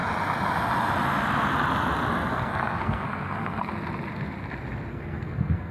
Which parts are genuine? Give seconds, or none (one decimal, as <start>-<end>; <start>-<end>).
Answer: 0.0-2.3; 3.7-4.9